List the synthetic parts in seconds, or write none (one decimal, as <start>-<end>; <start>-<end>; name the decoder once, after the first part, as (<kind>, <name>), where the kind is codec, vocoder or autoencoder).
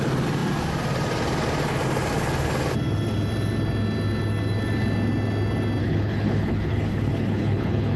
5.8-8.0 (codec, HILCodec)